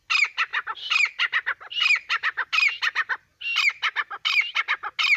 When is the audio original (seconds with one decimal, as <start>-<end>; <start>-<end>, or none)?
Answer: 0.0-0.5; 3.6-5.2

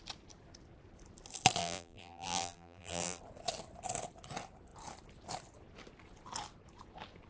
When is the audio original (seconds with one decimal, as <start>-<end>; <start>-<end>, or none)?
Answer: 0.0-1.6; 3.2-7.3

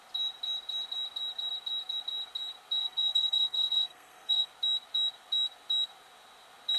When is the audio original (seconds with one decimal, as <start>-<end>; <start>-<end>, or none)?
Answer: 0.0-2.8; 4.5-6.8

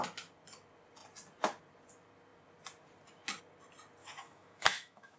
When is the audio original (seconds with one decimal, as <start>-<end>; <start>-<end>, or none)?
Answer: 0.0-4.0

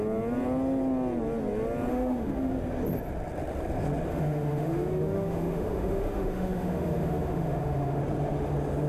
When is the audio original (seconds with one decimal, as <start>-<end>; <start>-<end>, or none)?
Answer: 0.0-1.9; 2.5-4.1; 8.0-8.9